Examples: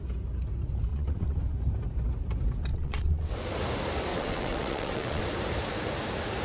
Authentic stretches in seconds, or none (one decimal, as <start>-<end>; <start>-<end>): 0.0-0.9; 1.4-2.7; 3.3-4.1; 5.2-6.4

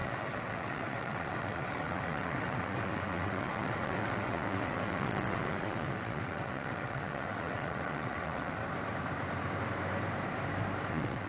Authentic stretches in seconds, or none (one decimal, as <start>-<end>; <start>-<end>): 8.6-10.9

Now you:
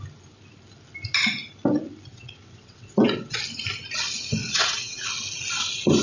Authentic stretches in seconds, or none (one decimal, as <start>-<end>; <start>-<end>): 0.0-2.1; 3.4-4.4; 5.1-6.0

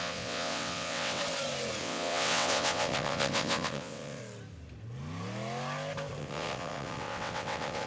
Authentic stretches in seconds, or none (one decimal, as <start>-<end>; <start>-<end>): 1.2-1.8; 4.2-6.2

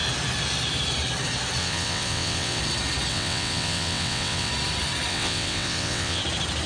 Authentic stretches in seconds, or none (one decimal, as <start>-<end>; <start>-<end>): 0.0-1.6; 2.6-3.1; 4.5-5.1; 6.2-6.7

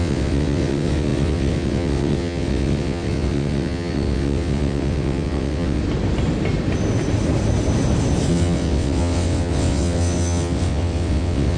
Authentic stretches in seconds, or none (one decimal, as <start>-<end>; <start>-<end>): 5.8-8.3

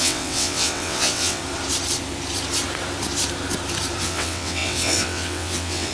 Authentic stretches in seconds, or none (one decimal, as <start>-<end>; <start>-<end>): 1.4-4.0